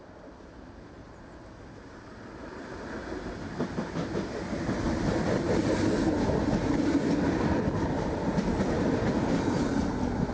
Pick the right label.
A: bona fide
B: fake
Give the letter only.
A